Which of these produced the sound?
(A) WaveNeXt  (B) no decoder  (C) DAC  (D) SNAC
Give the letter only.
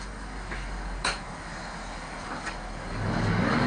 C